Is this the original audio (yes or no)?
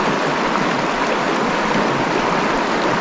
yes